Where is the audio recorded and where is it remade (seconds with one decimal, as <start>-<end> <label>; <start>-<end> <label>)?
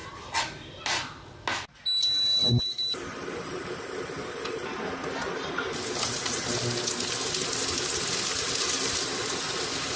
0.0-0.8 remade; 0.8-2.4 recorded; 2.4-3.8 remade; 3.8-10.0 recorded